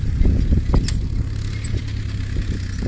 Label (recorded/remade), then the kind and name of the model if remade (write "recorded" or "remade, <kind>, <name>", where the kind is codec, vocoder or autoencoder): recorded